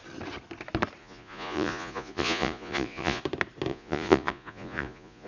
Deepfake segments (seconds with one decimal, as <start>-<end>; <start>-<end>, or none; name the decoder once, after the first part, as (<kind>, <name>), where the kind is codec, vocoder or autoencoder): 1.0-3.2 (vocoder, Vocos); 3.7-5.3